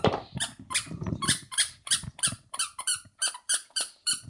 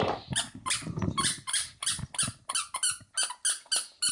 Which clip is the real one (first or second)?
second